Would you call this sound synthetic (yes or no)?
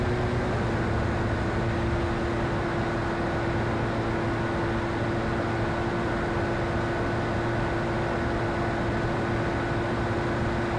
no